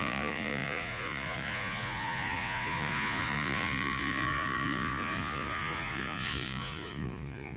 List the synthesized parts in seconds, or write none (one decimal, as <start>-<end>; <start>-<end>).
0.0-7.6